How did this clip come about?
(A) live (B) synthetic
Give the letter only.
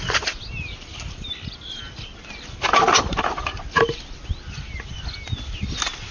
A